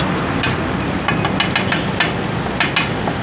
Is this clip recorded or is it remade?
recorded